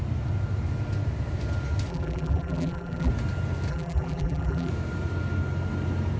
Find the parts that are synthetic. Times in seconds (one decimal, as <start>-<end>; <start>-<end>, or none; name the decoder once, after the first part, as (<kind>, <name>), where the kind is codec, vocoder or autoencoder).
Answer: 1.9-3.1 (vocoder, BigVGAN v2); 3.7-4.7